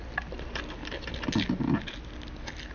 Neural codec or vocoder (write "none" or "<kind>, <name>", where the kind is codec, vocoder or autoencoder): none